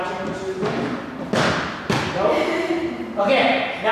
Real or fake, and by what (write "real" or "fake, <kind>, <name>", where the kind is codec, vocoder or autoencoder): real